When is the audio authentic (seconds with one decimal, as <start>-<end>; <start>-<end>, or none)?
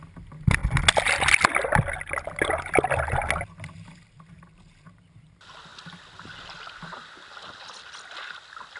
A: 0.0-8.8